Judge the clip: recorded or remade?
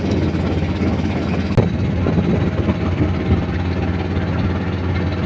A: recorded